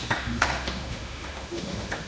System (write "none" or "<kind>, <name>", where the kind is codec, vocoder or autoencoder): autoencoder, DAC-VAE